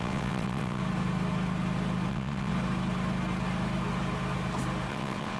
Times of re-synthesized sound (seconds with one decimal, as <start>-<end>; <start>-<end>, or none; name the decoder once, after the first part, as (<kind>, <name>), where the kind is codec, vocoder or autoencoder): 0.0-0.8 (vocoder, WaveNeXt); 2.1-2.5; 4.9-5.4